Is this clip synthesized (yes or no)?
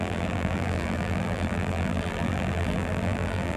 yes